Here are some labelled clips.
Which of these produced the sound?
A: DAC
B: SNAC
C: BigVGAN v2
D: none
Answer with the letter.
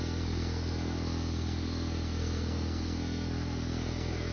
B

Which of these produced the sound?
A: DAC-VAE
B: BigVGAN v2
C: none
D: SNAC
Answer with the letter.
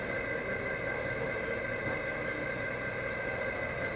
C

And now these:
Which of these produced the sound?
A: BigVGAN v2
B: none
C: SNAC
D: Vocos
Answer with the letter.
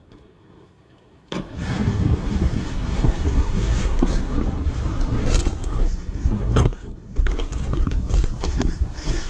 C